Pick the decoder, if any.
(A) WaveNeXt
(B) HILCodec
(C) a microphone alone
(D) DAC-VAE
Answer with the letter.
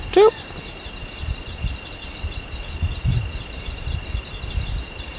C